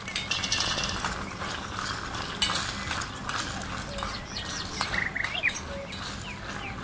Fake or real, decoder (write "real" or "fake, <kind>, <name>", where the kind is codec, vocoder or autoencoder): real